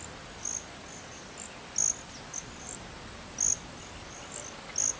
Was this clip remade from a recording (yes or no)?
no